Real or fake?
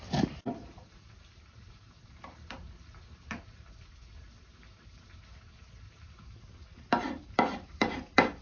fake